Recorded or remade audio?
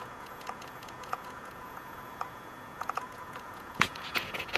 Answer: remade